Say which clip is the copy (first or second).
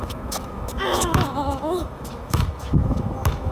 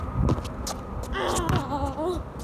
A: first